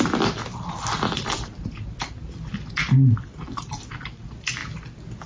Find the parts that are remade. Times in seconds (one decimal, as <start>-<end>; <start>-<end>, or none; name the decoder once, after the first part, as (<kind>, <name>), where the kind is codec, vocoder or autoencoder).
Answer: 0.0-0.5 (vocoder, BigVGAN v2); 3.7-4.6